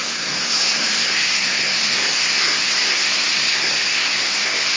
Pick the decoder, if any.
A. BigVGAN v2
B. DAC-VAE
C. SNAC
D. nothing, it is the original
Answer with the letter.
C